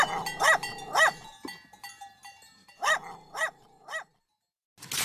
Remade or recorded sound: recorded